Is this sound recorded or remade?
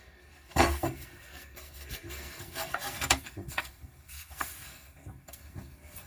remade